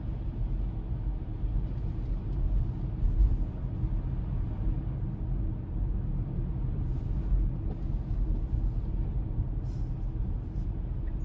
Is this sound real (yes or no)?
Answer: yes